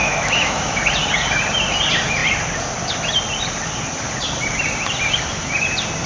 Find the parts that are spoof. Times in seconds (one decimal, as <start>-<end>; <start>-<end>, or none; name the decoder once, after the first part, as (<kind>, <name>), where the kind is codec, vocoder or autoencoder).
0.0-0.8 (autoencoder, DAC-VAE)